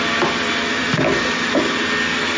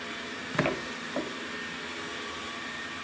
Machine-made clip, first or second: second